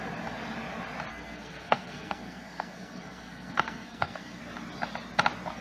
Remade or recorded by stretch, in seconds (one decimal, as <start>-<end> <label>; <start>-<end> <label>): 0.0-1.1 recorded; 1.1-4.4 remade; 4.4-5.6 recorded